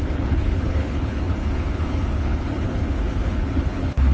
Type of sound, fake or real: fake